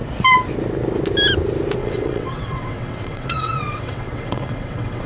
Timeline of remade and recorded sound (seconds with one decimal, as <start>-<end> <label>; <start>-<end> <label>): 0.0-1.8 recorded; 1.8-5.1 remade